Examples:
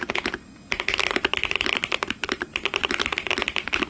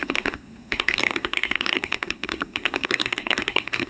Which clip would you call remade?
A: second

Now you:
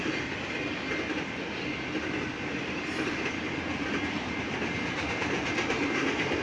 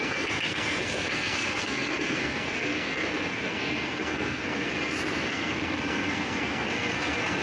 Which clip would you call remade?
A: second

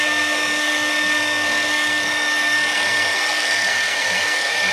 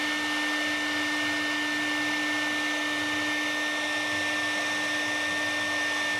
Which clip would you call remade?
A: first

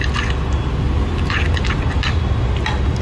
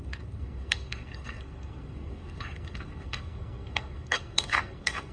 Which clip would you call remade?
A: second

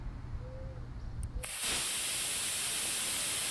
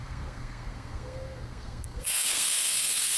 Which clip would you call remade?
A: second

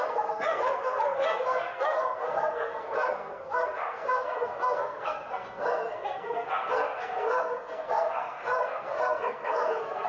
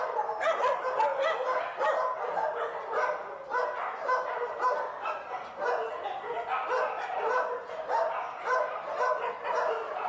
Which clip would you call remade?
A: first